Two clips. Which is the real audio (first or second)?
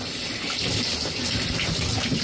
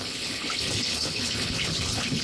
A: first